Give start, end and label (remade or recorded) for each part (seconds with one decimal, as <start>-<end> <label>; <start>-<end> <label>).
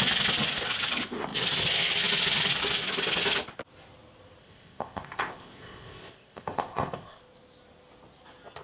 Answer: 0.0-4.4 recorded; 4.4-7.2 remade; 7.2-8.6 recorded